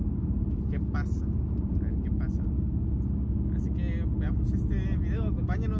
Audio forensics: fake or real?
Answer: real